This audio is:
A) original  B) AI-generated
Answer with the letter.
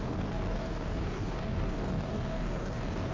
B